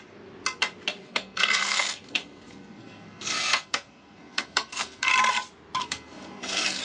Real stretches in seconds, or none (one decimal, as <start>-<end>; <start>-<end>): 0.0-1.0; 5.1-5.8